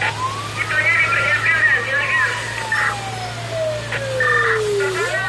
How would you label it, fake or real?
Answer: real